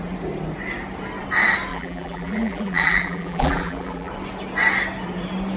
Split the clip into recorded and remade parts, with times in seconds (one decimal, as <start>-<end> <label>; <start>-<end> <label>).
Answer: 0.0-1.7 recorded; 1.7-4.1 remade; 4.1-5.6 recorded